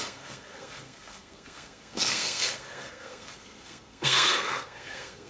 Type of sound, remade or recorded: remade